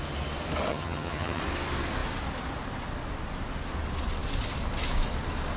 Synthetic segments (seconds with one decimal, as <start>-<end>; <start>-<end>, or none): 0.7-1.4